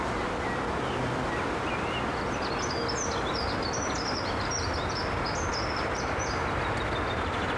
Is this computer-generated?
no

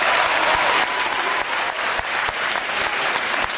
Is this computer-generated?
no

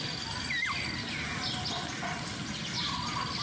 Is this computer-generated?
no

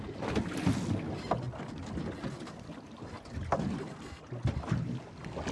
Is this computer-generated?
no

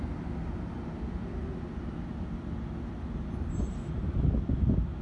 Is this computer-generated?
no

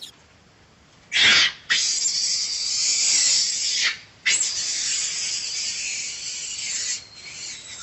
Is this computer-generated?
no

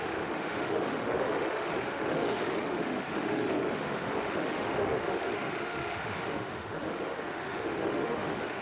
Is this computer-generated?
yes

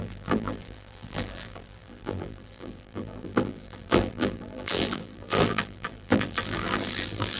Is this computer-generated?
yes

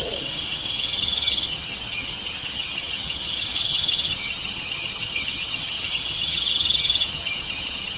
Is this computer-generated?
yes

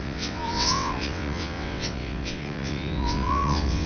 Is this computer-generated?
yes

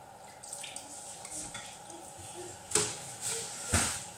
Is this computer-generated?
no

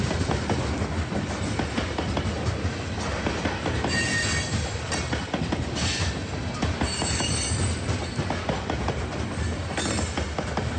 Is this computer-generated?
no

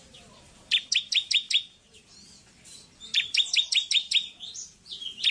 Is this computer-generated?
yes